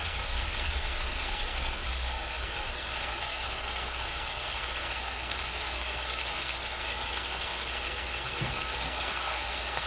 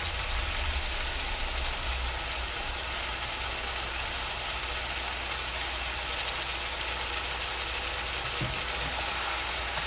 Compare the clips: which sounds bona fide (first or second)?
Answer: second